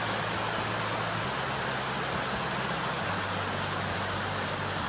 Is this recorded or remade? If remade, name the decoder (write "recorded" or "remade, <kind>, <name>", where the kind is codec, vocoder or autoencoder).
recorded